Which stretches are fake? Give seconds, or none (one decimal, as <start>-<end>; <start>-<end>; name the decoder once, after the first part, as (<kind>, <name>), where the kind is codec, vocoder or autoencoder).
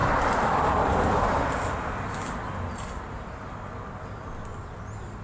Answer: none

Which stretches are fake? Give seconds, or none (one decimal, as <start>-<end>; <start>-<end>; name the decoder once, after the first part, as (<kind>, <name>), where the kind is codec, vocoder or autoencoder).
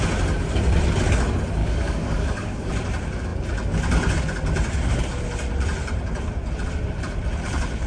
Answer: 1.6-2.7 (codec, DAC)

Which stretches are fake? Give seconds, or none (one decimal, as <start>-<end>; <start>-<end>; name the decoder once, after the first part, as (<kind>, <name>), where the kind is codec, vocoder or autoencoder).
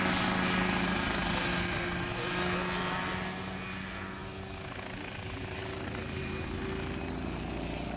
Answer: none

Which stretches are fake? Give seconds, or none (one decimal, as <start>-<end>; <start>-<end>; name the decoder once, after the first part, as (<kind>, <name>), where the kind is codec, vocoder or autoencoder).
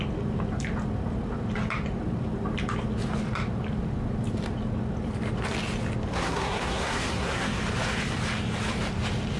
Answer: 6.1-7.6 (codec, SNAC)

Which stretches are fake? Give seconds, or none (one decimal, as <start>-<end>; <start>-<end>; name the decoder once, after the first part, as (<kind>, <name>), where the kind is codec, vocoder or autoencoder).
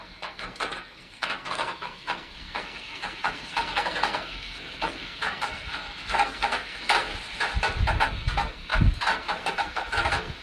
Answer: 0.0-7.1 (codec, SNAC); 7.9-10.4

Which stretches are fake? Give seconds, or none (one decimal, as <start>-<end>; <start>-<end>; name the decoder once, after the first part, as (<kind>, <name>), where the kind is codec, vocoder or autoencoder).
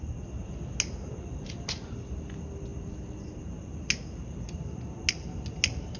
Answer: none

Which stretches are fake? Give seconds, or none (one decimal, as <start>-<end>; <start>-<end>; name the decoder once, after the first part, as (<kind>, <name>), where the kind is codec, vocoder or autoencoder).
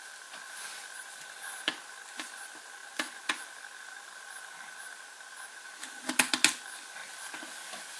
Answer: none